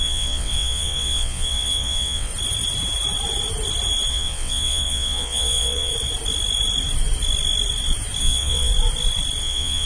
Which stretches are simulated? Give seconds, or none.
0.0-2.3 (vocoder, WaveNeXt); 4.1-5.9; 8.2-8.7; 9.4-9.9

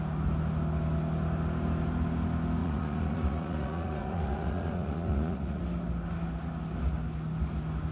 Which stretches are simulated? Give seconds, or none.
2.6-5.6 (vocoder, Vocos)